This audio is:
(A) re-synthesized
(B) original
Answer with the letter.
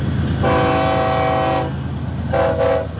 B